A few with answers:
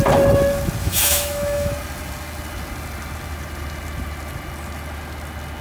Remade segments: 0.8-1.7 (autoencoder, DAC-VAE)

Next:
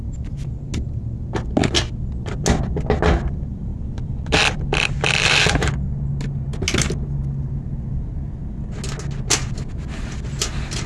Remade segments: 3.7-5.7 (vocoder, BigVGAN v2)

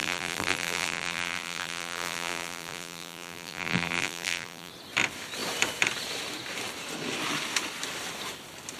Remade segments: 0.0-4.7 (vocoder, BigVGAN v2)